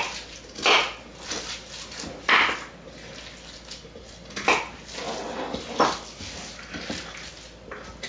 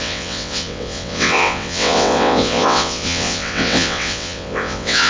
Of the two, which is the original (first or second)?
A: first